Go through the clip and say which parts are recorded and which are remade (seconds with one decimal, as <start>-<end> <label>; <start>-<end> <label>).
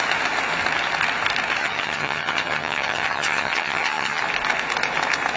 0.0-1.6 recorded; 1.6-4.2 remade; 4.2-5.4 recorded